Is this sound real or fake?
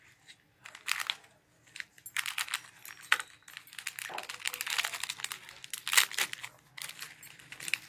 real